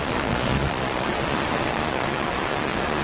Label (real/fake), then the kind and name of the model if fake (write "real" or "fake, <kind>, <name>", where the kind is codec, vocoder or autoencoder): fake, vocoder, Vocos